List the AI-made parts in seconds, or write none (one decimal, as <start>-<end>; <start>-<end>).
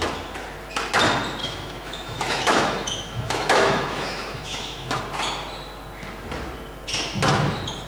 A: 1.4-5.0